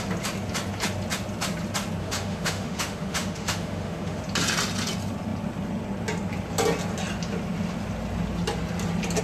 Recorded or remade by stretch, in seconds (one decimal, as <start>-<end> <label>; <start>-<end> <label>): 0.0-2.0 recorded; 2.0-4.2 remade; 4.2-9.2 recorded